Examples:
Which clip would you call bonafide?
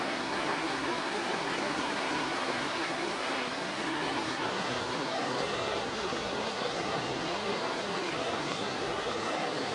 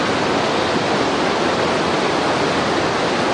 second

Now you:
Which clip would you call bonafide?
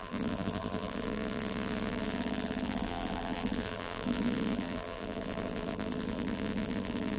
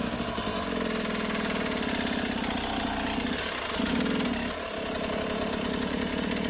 second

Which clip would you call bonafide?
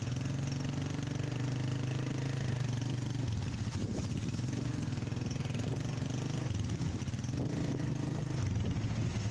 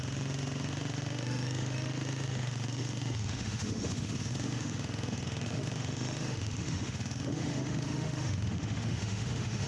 first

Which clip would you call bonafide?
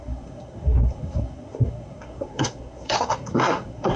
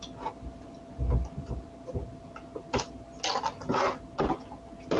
second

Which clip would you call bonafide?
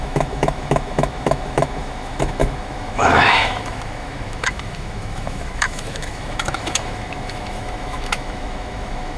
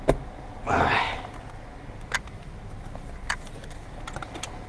second